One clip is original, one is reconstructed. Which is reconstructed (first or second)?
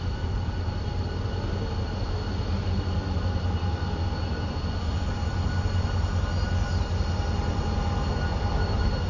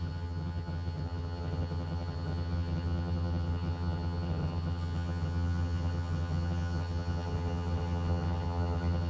second